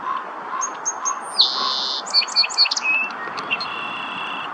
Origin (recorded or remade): recorded